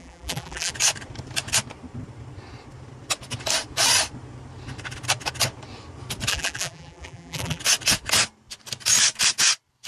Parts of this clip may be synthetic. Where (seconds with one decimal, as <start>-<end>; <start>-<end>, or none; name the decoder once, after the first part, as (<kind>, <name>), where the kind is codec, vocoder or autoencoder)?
0.0-0.7 (vocoder, BigVGAN v2); 6.3-7.6